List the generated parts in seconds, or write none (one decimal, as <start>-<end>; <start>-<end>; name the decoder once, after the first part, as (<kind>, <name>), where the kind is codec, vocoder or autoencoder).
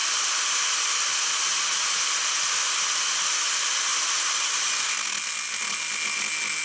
0.0-0.7 (vocoder, BigVGAN v2)